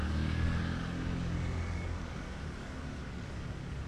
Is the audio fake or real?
fake